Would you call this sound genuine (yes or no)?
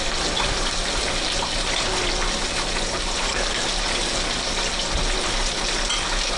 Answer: yes